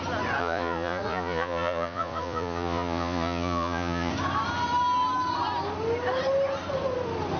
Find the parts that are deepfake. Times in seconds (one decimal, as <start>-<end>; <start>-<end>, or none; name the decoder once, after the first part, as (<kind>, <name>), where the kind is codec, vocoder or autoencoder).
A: 0.4-4.1 (vocoder, Vocos)